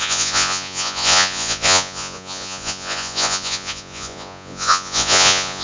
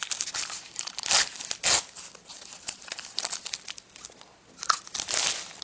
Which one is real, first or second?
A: second